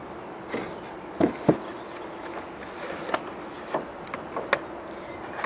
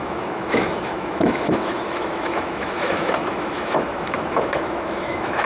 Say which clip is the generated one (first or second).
second